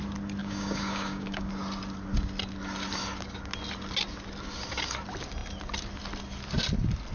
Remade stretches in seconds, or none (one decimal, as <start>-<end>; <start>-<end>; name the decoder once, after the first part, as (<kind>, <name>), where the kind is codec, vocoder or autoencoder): 0.4-1.5 (codec, DAC)